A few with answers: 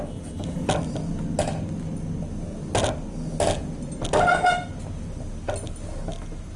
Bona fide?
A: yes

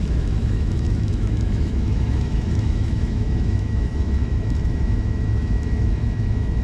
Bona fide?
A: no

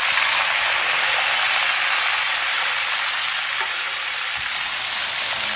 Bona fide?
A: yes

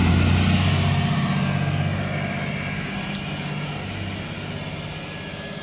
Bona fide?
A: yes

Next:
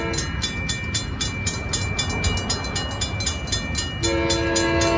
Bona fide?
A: yes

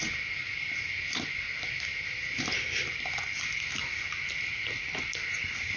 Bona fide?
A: yes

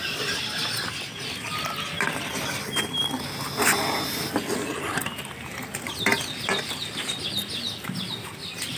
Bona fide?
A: yes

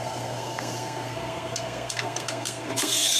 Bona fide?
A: no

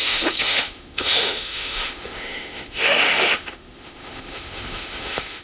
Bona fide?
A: no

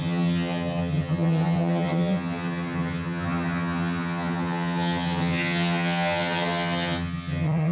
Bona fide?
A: no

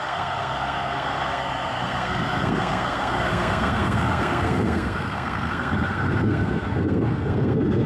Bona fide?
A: no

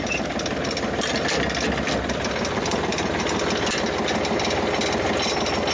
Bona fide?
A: yes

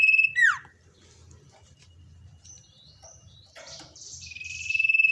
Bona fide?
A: no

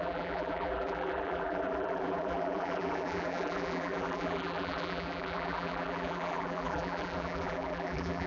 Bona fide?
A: no